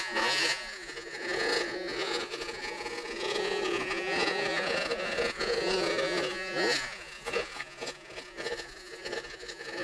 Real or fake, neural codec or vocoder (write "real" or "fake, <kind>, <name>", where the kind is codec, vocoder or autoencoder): fake, vocoder, Vocos